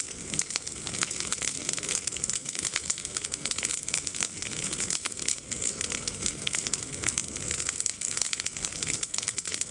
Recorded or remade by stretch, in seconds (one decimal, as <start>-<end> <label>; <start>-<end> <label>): 0.0-9.7 remade